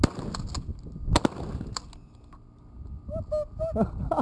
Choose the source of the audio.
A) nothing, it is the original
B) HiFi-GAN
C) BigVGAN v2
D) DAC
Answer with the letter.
A